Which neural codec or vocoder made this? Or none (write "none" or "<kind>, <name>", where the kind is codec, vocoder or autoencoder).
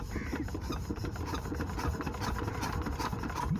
vocoder, BigVGAN v2